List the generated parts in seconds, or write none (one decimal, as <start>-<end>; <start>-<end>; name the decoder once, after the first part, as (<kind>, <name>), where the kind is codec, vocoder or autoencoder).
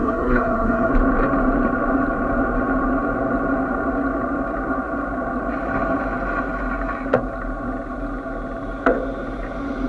0.0-0.9 (codec, SNAC)